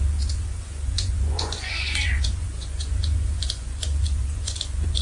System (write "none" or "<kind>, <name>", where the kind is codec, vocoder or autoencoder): vocoder, Vocos